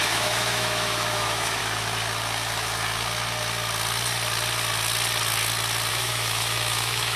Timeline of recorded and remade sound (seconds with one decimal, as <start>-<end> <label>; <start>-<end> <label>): 0.0-1.6 remade; 1.6-5.9 recorded; 5.9-7.2 remade